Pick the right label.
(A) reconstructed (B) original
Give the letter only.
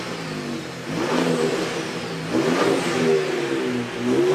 B